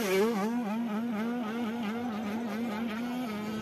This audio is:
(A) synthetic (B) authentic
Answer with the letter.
B